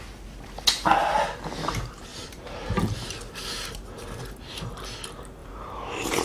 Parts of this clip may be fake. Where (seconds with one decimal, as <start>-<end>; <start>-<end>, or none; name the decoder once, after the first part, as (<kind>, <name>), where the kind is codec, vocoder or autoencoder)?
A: 2.1-4.2 (vocoder, BigVGAN v2); 5.4-6.2